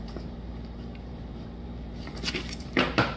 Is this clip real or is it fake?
fake